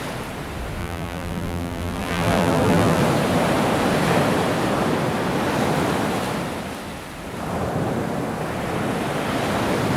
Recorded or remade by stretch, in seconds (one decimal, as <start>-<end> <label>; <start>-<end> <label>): 0.0-0.8 recorded; 0.8-3.0 remade; 3.0-10.0 recorded